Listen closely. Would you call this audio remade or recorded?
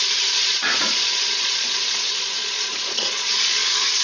remade